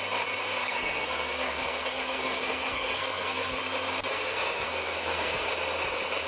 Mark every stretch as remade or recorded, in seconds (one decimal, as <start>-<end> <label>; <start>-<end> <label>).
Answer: 0.0-0.6 recorded; 0.6-3.6 remade; 3.6-4.1 recorded; 4.1-5.5 remade; 5.5-6.3 recorded